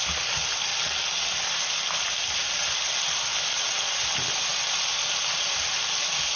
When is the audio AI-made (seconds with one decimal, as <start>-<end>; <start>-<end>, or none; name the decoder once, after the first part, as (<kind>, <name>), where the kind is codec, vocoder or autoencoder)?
none